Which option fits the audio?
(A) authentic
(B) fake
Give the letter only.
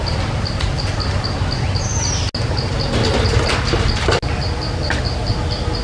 A